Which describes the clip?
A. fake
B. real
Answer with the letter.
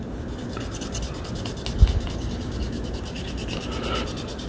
B